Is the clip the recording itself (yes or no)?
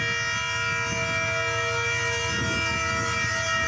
yes